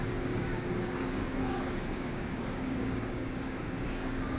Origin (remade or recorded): remade